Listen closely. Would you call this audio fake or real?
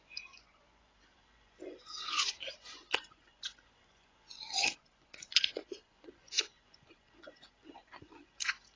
fake